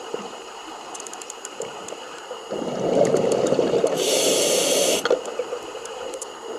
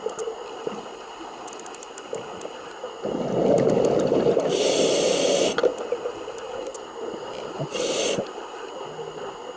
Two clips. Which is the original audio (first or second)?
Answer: second